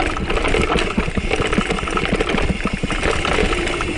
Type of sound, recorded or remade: recorded